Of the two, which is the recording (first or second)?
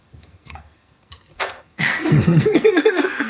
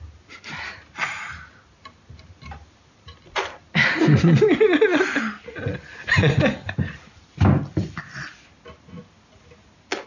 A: second